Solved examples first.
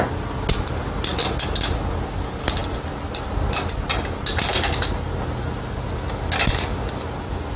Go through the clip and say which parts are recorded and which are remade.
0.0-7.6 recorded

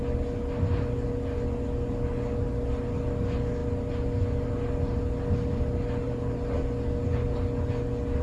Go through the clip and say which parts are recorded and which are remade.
0.0-8.2 recorded

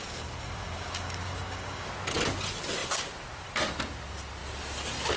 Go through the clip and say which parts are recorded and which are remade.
0.0-1.9 remade; 1.9-5.2 recorded

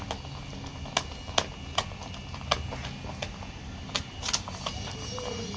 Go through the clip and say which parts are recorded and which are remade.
0.0-5.6 recorded

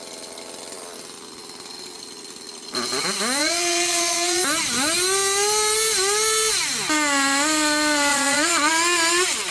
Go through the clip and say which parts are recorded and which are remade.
0.0-3.4 recorded; 3.4-4.4 remade; 4.4-8.1 recorded; 8.1-8.7 remade; 8.7-9.5 recorded

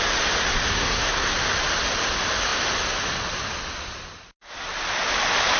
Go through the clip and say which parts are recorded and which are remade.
0.0-0.7 recorded; 0.7-1.3 remade; 1.3-5.6 recorded

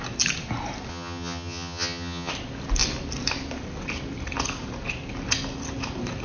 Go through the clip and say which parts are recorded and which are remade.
0.0-0.9 recorded; 0.9-2.3 remade; 2.3-6.2 recorded

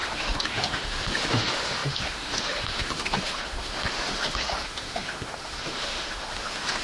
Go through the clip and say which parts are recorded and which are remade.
0.0-6.8 remade